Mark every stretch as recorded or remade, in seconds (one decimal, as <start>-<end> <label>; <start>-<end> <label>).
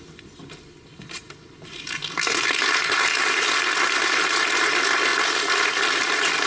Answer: 0.0-6.5 recorded